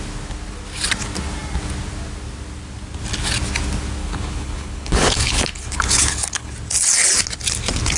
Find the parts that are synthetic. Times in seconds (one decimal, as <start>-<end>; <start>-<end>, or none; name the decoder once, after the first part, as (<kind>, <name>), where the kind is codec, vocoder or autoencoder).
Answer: 4.0-6.5 (codec, HILCodec)